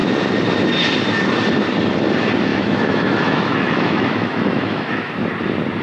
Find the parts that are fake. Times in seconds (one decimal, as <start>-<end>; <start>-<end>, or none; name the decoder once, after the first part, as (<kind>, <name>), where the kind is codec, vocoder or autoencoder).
2.5-5.1 (autoencoder, DAC-VAE)